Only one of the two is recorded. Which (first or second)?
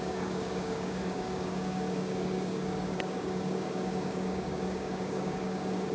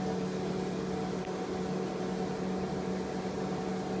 second